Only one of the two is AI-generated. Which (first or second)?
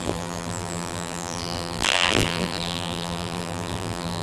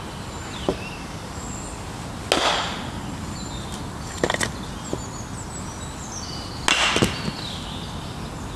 first